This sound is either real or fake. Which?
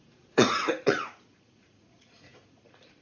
fake